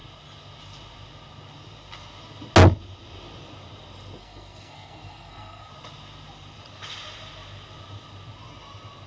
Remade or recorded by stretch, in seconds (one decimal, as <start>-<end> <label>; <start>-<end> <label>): 0.0-4.2 recorded; 4.2-5.7 remade; 5.7-9.1 recorded